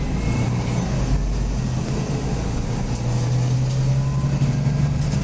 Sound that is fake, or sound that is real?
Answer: real